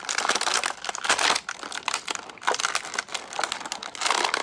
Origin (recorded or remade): recorded